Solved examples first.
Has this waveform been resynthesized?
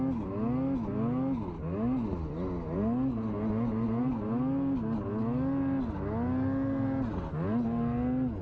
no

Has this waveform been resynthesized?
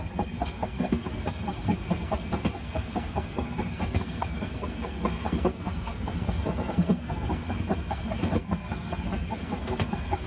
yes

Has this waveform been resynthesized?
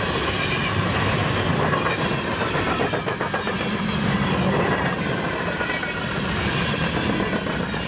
no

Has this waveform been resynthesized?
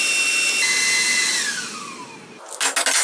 no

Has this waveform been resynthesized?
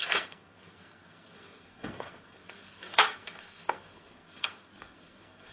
yes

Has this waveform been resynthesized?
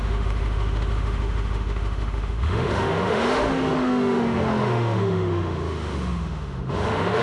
yes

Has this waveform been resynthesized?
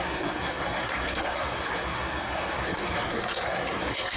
yes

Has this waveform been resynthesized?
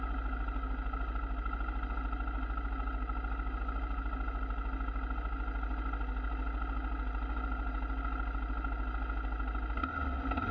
no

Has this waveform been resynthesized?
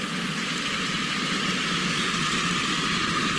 no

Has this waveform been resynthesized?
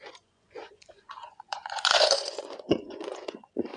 yes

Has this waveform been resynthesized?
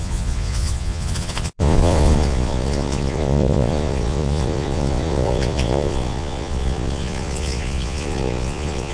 yes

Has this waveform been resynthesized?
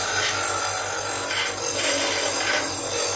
no